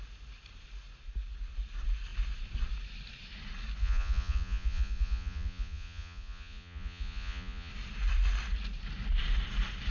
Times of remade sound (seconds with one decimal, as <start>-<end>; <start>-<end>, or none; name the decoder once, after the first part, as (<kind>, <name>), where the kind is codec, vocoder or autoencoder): 3.8-7.7 (vocoder, Vocos)